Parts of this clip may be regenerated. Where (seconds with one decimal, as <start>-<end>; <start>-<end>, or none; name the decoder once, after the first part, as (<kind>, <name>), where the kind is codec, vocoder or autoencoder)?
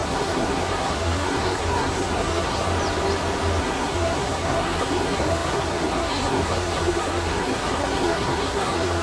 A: 0.0-2.7 (codec, SNAC); 3.6-9.0